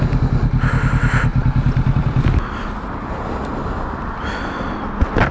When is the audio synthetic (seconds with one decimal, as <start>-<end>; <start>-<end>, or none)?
1.3-4.5